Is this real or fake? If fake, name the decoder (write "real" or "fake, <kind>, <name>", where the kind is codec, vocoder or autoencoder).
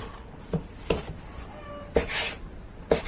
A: real